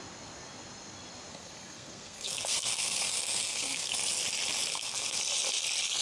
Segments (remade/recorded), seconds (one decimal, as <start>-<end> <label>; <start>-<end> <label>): 0.0-1.3 recorded; 1.3-3.9 remade; 3.9-4.7 recorded; 4.7-5.2 remade; 5.2-6.0 recorded

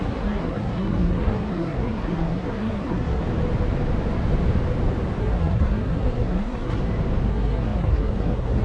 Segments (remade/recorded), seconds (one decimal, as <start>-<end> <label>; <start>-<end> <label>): 0.0-3.2 remade; 3.2-5.2 recorded; 5.2-6.8 remade; 6.8-7.3 recorded; 7.3-8.6 remade

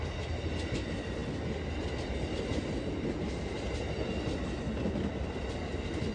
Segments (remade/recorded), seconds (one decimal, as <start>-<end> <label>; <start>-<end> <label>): 0.0-6.1 recorded

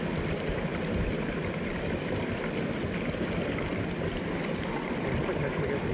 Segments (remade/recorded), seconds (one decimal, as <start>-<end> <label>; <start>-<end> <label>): 0.0-5.9 recorded

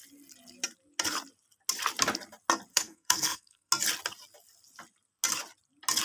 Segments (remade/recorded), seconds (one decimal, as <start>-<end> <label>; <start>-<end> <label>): 0.0-2.7 recorded; 2.7-3.7 remade; 3.7-6.0 recorded

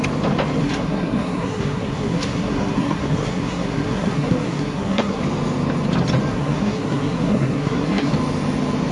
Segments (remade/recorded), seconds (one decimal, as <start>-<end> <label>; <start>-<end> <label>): 0.0-0.6 recorded; 0.6-5.2 remade; 5.2-6.3 recorded; 6.3-8.1 remade; 8.1-8.9 recorded

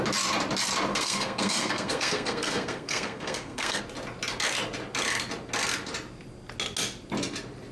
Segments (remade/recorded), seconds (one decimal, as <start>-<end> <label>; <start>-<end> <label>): 0.0-0.9 recorded; 0.9-3.8 remade; 3.8-7.7 recorded